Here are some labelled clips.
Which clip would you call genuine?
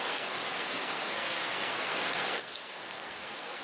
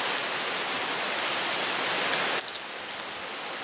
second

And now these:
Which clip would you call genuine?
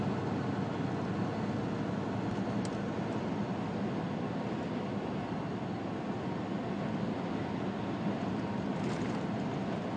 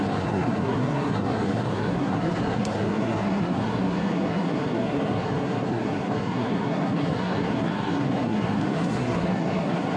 first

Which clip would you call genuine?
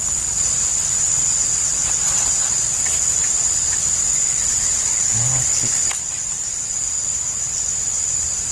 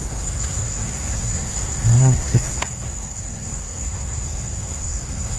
first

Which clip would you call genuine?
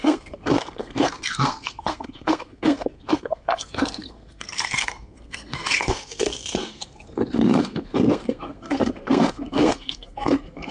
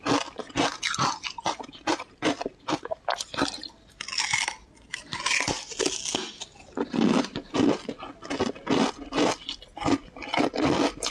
second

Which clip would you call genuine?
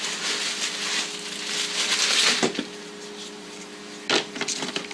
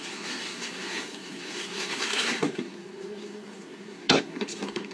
first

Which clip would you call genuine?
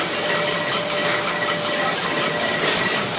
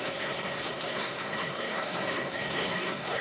first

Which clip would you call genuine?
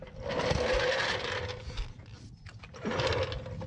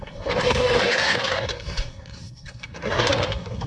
first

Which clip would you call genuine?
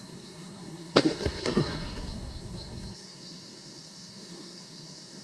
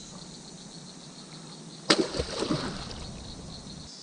second